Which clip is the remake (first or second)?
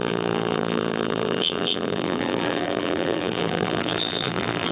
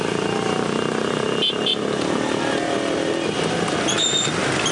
first